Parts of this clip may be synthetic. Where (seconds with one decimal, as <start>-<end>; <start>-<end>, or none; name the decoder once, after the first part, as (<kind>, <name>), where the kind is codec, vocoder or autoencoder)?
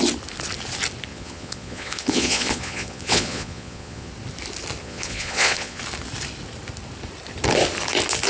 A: 1.1-4.1 (vocoder, Vocos); 4.8-5.8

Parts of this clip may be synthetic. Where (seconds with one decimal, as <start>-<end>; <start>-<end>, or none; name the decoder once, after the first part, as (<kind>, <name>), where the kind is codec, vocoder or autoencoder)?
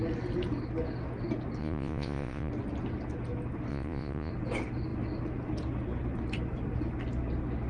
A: 1.6-2.5 (vocoder, Vocos); 3.7-4.3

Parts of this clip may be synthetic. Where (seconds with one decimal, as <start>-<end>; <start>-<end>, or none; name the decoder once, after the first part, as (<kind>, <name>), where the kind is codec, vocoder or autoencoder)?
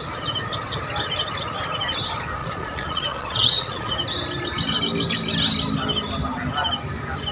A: 2.4-3.9 (vocoder, Vocos)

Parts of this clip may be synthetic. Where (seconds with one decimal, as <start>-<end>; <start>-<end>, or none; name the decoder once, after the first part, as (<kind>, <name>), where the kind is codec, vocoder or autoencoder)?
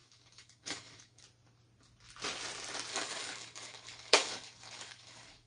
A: 0.0-1.2 (codec, DAC); 2.9-5.5